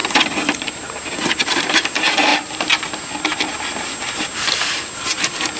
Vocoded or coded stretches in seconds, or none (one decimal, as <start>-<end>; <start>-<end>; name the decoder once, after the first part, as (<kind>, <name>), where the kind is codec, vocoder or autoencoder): none